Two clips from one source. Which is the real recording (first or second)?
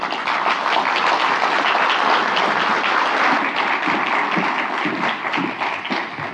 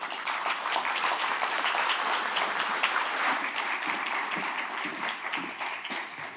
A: first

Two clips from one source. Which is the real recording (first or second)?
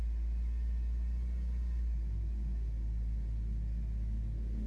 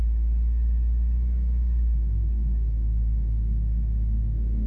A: first